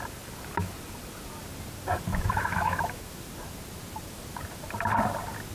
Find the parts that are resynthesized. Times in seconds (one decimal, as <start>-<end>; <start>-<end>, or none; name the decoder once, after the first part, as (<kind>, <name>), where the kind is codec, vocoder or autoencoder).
2.1-3.2 (autoencoder, DAC-VAE)